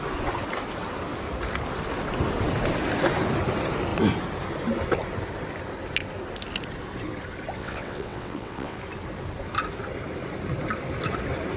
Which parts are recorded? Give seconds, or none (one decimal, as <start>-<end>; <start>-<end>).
0.0-7.6; 8.8-11.6

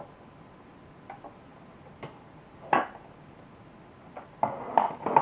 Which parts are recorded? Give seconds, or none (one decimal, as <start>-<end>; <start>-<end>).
0.0-5.2

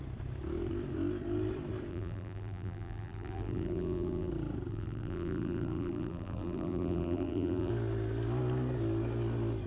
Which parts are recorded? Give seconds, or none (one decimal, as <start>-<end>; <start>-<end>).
0.0-1.9; 4.3-4.7; 7.7-9.7

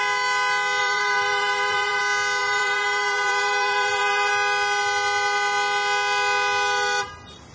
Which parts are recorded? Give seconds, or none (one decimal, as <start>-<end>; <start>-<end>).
0.0-0.8; 2.0-2.4; 4.3-7.5

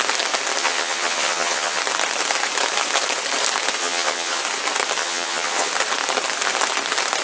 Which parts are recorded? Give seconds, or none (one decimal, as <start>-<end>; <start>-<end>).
0.0-0.6; 1.8-3.8; 4.4-5.0; 5.7-7.2